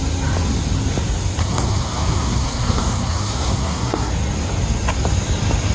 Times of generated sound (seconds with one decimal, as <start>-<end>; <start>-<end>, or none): 1.4-4.1